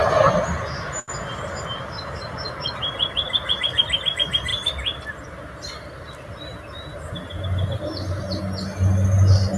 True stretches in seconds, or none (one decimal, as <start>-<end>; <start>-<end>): 0.0-9.6